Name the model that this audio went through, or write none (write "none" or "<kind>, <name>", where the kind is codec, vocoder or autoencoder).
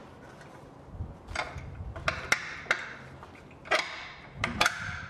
none